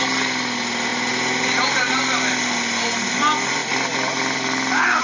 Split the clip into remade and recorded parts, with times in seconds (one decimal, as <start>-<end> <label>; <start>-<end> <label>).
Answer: 0.0-5.0 recorded